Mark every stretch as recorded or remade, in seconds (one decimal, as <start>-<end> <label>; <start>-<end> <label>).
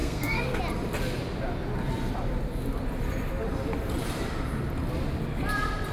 0.0-0.6 remade; 0.6-5.9 recorded